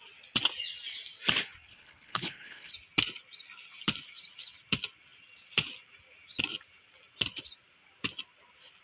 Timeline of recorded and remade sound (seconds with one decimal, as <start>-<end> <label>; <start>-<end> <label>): 0.0-1.7 recorded; 1.7-2.7 remade; 2.7-8.8 recorded